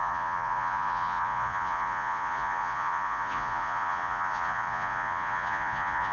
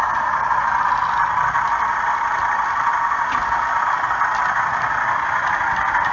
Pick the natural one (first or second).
second